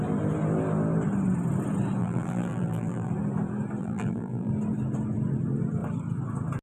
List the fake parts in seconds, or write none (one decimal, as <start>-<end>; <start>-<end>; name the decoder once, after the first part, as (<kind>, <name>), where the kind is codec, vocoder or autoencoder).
2.0-3.1 (vocoder, BigVGAN v2); 3.8-4.5